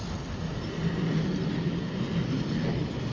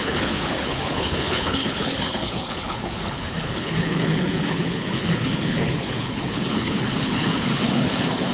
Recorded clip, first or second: first